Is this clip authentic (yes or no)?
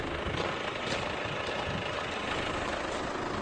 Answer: yes